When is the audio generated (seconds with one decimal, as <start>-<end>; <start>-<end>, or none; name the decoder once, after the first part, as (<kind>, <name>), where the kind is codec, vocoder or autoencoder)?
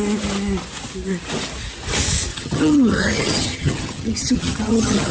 2.3-5.1 (vocoder, HiFi-GAN)